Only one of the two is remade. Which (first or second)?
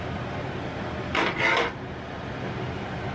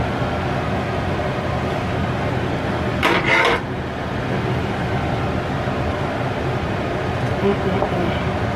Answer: first